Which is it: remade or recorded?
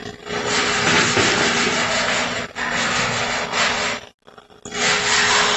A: recorded